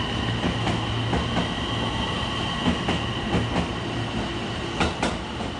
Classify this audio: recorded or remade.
recorded